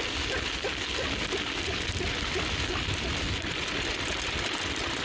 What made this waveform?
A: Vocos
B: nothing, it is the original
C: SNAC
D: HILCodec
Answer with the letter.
B